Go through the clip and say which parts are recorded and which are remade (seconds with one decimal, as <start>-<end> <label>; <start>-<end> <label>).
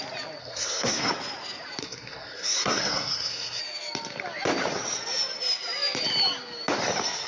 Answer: 0.0-0.4 recorded; 0.4-1.1 remade; 1.1-1.8 recorded; 1.8-3.6 remade; 3.6-7.3 recorded